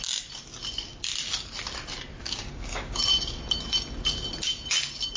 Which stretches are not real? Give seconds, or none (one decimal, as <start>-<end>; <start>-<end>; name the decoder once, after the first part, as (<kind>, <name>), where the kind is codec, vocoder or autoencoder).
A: 2.2-3.0 (codec, DAC)